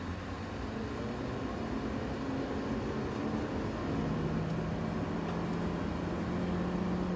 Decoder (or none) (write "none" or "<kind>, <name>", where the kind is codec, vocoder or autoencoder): none